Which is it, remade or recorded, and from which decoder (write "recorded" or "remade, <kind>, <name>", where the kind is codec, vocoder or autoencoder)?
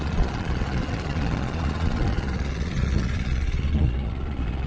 remade, vocoder, Vocos